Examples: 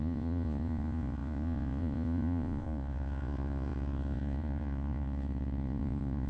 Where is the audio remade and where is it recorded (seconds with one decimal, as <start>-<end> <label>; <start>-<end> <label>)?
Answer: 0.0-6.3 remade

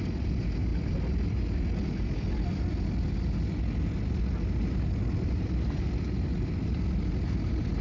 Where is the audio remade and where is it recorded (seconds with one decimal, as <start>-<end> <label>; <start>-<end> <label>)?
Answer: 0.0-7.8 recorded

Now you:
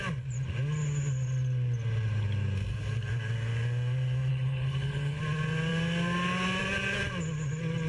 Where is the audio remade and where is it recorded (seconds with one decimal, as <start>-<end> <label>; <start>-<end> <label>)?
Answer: 0.0-4.3 recorded; 4.3-5.2 remade; 5.2-7.9 recorded